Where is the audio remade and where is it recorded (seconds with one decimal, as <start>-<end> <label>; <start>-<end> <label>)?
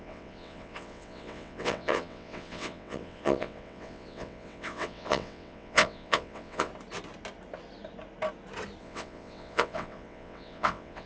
0.0-6.7 remade; 6.7-8.8 recorded; 8.8-11.1 remade